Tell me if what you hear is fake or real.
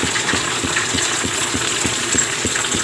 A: fake